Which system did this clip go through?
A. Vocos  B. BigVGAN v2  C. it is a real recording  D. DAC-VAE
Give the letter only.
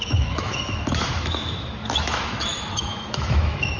D